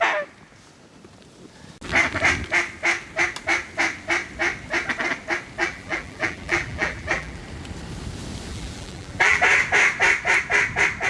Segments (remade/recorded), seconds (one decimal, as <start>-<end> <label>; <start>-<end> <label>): 0.0-5.6 recorded; 5.6-7.4 remade; 7.4-8.5 recorded; 8.5-9.4 remade; 9.4-11.1 recorded